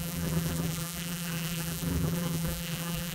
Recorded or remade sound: remade